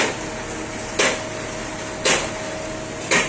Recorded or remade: recorded